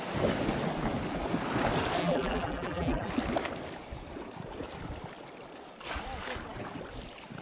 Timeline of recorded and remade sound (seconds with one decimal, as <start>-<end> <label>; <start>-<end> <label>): 0.0-2.0 recorded; 2.0-3.1 remade; 3.1-7.4 recorded